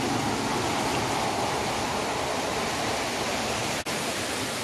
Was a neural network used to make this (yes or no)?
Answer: no